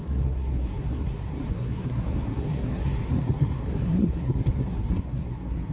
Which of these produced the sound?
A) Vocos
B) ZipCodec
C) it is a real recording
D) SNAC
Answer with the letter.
D